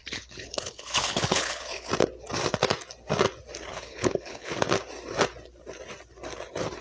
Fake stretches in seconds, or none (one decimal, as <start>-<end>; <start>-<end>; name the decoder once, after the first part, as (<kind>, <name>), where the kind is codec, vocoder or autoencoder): 0.0-1.9 (codec, HILCodec); 3.7-4.5